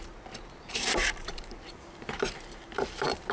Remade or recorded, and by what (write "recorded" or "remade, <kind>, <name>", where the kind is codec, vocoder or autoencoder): remade, vocoder, BigVGAN v2